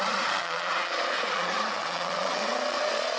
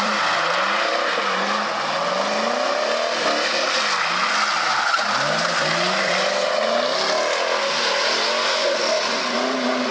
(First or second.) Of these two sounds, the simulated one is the first